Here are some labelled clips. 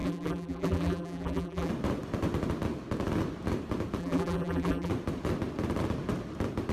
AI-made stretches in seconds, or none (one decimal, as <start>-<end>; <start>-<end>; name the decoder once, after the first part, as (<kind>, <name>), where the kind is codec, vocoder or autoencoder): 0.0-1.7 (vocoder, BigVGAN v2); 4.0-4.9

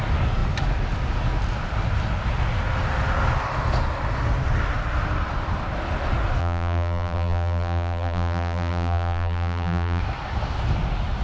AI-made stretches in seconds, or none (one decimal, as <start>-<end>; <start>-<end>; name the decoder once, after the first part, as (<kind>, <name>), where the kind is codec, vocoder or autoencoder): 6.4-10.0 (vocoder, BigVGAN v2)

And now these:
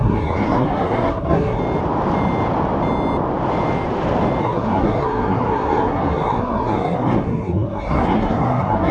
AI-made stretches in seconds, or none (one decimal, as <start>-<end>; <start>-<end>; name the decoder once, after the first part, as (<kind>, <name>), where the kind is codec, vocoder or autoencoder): 0.0-1.6 (codec, SNAC); 4.4-8.9